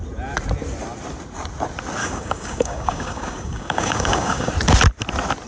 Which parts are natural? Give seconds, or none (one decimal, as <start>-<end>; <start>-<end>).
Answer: 0.0-2.0; 4.5-5.5